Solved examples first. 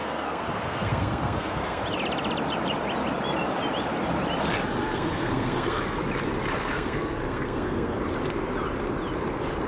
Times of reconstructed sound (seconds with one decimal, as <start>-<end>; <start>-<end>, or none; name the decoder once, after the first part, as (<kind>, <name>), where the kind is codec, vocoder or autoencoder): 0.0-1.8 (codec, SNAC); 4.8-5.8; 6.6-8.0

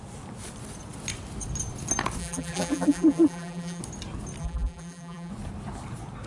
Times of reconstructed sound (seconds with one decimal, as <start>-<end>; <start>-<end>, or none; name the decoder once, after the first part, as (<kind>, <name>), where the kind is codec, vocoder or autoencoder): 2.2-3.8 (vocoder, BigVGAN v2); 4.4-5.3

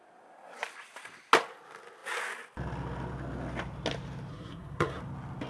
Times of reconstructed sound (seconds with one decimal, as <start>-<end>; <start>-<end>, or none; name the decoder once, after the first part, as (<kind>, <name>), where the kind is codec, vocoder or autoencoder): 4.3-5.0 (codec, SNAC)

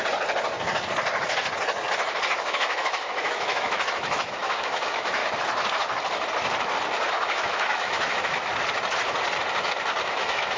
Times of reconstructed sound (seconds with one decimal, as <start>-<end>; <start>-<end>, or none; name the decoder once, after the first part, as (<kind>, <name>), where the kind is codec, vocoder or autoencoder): 2.3-5.2 (autoencoder, DAC-VAE); 7.1-8.5; 10.1-10.6